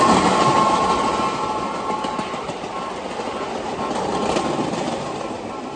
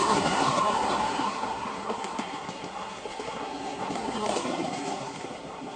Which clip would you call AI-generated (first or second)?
second